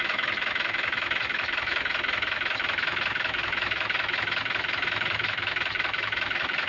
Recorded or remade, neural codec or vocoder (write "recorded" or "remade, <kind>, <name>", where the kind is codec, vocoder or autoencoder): remade, autoencoder, DAC-VAE